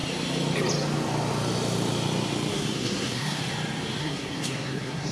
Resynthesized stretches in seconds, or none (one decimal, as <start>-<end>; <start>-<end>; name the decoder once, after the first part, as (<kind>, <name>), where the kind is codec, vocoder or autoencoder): 2.5-3.4 (codec, SNAC); 4.0-5.1